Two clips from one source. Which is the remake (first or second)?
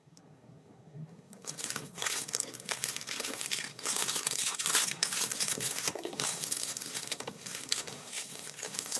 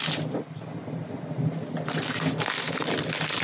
first